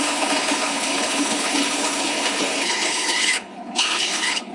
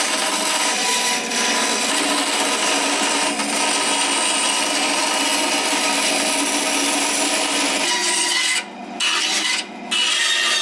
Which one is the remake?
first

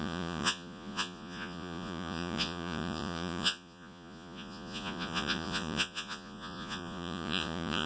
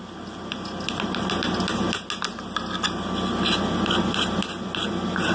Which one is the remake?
first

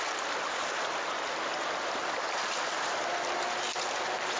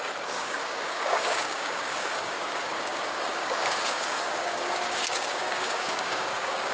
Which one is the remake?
second